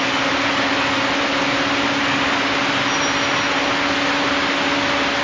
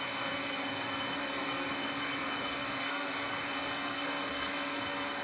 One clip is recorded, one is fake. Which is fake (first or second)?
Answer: second